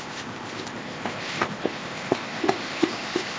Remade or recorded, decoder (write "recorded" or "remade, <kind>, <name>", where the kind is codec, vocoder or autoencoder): remade, codec, ZipCodec